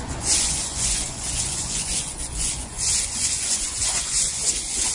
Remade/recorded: remade